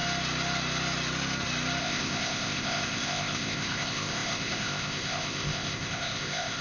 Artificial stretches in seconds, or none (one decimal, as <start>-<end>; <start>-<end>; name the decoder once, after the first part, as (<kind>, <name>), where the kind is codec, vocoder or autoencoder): 1.8-6.6 (codec, ZipCodec)